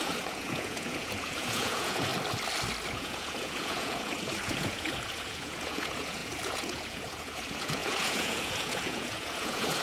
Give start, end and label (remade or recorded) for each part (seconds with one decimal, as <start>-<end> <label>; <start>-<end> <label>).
0.0-2.1 remade; 2.1-2.9 recorded; 2.9-9.8 remade